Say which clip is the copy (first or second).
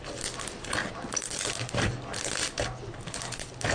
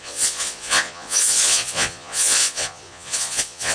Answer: second